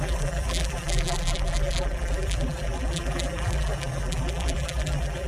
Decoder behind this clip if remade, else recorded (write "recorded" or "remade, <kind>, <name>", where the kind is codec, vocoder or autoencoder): remade, vocoder, BigVGAN v2